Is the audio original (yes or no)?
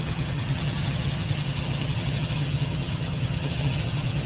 no